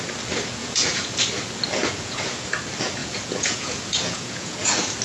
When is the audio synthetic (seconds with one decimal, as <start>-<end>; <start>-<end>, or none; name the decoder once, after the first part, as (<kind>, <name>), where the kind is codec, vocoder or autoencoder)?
0.6-1.2 (vocoder, Vocos); 1.8-2.5; 3.0-5.0